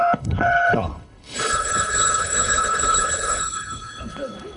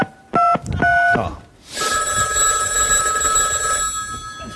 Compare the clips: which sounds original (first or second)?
second